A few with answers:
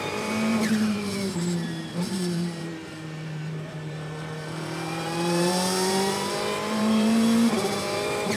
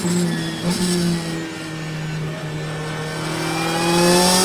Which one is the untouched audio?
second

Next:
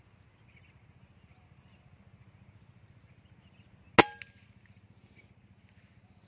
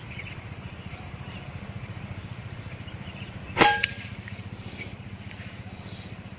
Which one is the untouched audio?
first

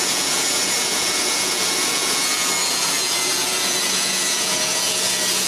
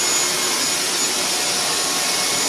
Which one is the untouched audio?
second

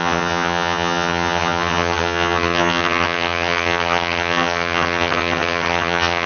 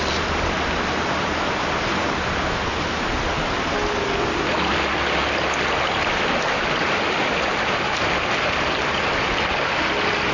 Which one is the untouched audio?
second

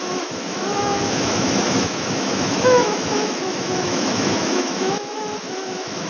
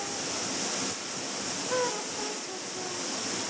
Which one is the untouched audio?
second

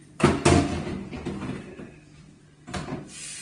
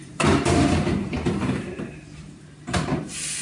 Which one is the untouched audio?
first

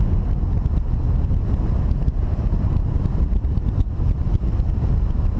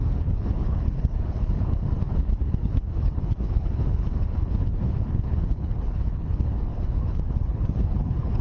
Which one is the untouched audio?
first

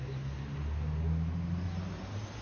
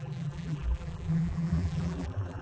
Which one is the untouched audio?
first